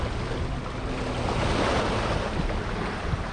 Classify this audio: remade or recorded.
recorded